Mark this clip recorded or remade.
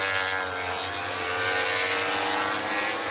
recorded